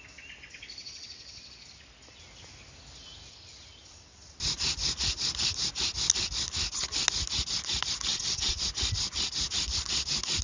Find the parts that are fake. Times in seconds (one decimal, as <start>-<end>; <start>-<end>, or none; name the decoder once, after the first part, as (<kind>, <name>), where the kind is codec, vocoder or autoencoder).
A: 0.8-1.5 (vocoder, WaveNeXt); 8.1-8.6